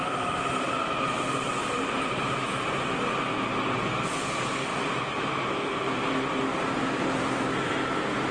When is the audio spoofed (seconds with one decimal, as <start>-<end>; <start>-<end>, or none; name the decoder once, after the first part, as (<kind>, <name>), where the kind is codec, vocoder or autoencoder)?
0.0-0.8 (vocoder, BigVGAN v2); 1.6-2.4; 4.7-6.0